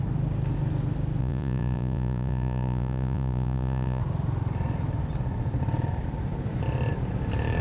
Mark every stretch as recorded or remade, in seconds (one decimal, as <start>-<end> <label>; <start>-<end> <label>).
0.0-1.2 recorded; 1.2-4.0 remade; 4.0-7.6 recorded